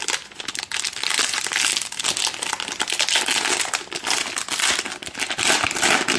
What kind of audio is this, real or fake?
real